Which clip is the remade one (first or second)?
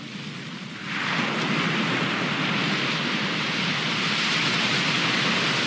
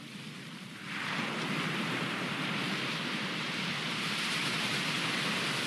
second